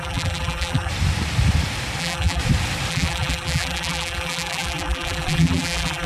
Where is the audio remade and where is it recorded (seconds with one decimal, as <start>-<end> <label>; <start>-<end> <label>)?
0.0-0.9 remade; 0.9-2.0 recorded; 2.0-2.4 remade; 2.4-2.9 recorded; 2.9-6.1 remade